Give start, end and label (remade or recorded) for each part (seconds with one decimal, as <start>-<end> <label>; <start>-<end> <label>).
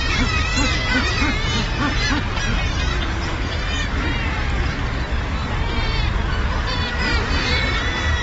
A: 0.0-0.5 remade; 0.5-2.9 recorded; 2.9-8.2 remade